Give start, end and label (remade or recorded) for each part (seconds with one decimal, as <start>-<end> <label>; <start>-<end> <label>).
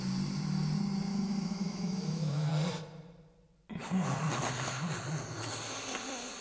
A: 0.0-1.1 recorded; 1.1-2.5 remade; 2.5-6.4 recorded